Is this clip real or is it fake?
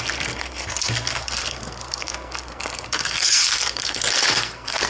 fake